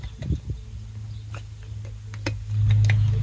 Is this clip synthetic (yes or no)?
no